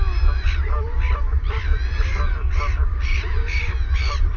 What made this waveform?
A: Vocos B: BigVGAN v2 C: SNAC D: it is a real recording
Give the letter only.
B